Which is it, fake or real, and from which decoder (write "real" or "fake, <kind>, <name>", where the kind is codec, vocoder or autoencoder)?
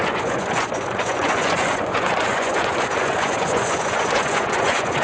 fake, vocoder, Vocos